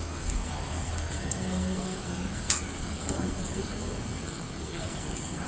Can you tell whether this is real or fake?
fake